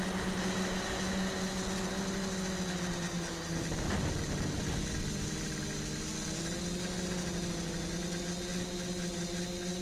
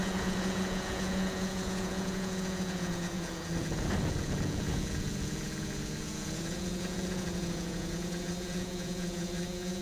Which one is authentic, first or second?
first